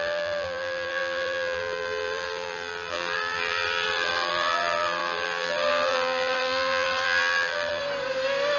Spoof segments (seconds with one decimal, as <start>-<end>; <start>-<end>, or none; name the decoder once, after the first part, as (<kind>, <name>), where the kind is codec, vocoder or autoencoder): 0.0-7.8 (vocoder, BigVGAN v2)